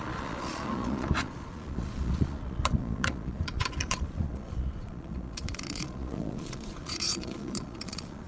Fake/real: fake